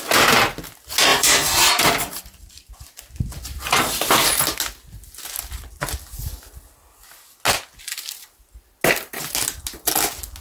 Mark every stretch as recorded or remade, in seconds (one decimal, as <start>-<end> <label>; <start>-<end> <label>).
0.0-1.1 recorded; 1.1-2.7 remade; 2.7-10.4 recorded